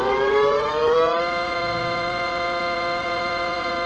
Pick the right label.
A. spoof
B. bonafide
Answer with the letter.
A